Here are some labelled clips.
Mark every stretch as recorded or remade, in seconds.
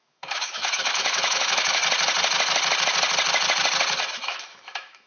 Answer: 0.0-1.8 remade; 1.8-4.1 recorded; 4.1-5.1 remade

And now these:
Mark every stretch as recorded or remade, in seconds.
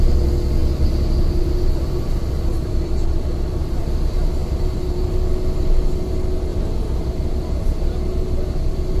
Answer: 0.0-4.4 recorded; 4.4-5.3 remade; 5.3-6.5 recorded; 6.5-7.1 remade; 7.1-9.0 recorded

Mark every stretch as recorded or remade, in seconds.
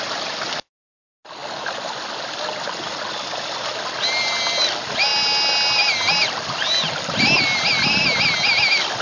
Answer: 0.0-9.0 recorded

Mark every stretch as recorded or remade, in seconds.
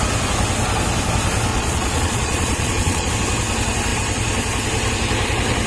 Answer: 0.0-1.5 recorded; 1.5-3.1 remade; 3.1-5.7 recorded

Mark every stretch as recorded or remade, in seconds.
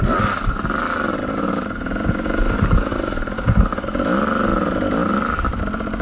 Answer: 0.0-6.0 recorded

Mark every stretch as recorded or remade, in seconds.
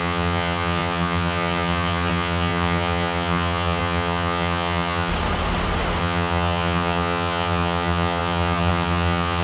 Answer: 0.0-5.1 remade; 5.1-6.0 recorded; 6.0-9.4 remade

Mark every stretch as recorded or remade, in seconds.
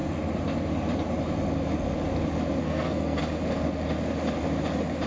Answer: 0.0-2.6 recorded; 2.6-3.2 remade; 3.2-5.1 recorded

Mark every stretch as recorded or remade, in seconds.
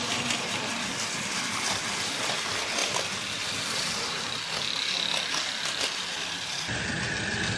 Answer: 0.0-7.6 recorded